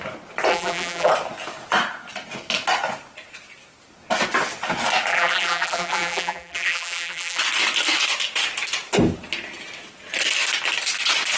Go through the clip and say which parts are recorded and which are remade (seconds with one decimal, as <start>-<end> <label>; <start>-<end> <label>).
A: 0.0-0.5 recorded; 0.5-1.1 remade; 1.1-5.1 recorded; 5.1-7.4 remade; 7.4-11.4 recorded